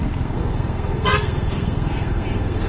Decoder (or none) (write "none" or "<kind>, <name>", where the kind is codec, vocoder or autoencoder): codec, SNAC